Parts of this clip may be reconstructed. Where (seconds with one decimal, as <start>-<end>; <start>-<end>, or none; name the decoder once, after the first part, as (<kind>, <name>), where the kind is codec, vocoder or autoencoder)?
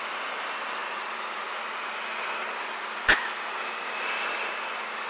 none